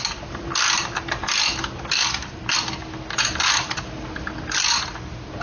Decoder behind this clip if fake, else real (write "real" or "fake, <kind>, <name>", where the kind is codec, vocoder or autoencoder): real